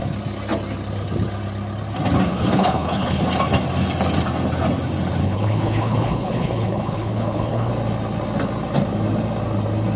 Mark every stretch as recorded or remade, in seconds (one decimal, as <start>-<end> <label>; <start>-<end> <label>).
0.0-2.3 recorded; 2.3-3.2 remade; 3.2-5.2 recorded; 5.2-7.7 remade; 7.7-10.0 recorded